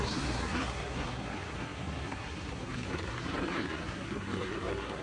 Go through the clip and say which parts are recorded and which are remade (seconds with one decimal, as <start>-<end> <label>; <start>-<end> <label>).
0.0-5.0 remade